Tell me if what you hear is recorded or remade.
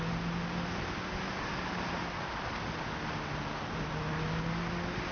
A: recorded